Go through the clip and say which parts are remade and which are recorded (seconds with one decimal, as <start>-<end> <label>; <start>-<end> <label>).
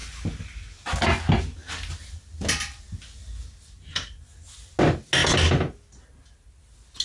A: 0.0-7.0 recorded